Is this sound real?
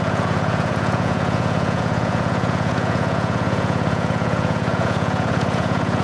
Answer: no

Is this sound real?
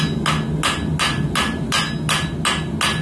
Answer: yes